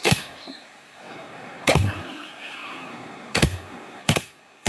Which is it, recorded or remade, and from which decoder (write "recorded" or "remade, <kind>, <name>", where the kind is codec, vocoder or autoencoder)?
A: remade, codec, SNAC